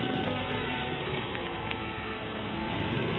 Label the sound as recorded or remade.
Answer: remade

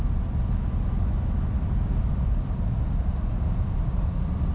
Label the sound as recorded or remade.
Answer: recorded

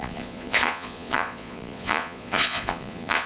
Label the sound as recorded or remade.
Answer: remade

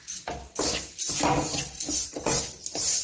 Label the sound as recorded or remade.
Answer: recorded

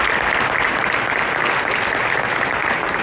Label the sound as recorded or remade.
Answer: recorded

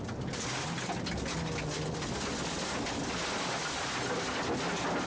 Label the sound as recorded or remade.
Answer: recorded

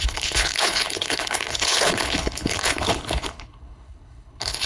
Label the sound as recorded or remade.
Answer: remade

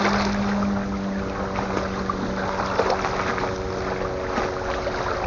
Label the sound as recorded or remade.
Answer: recorded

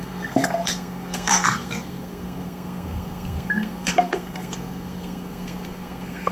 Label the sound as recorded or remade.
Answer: remade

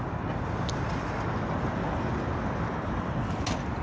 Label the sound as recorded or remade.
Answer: recorded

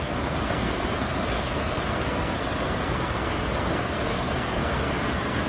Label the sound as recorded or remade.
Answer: remade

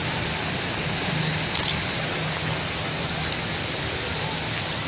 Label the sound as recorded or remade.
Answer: recorded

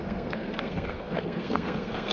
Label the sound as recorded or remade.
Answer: remade